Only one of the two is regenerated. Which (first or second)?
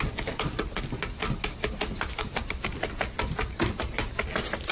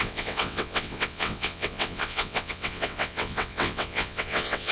second